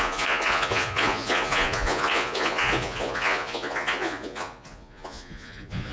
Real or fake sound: fake